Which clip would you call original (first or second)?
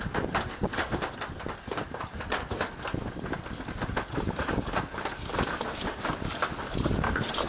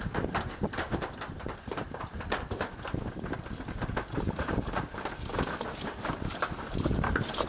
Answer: first